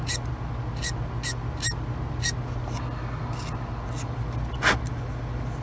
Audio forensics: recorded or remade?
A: recorded